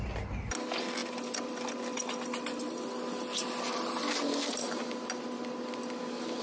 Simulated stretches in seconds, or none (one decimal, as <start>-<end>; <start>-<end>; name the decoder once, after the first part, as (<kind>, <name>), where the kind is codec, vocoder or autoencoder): none